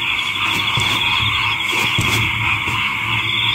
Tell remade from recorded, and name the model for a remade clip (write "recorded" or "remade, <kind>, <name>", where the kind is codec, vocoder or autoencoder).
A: recorded